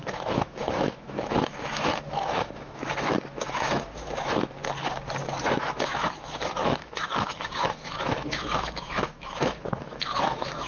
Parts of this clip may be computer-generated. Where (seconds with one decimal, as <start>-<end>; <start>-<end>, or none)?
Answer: 0.0-4.6; 5.4-10.7

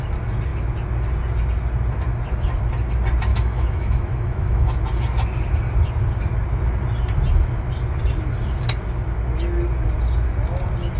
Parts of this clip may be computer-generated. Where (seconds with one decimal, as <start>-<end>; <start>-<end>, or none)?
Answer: 3.3-4.7

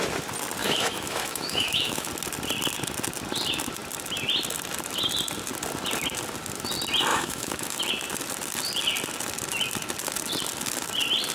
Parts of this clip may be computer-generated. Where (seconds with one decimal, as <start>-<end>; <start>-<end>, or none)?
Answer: 0.6-2.1; 7.1-7.8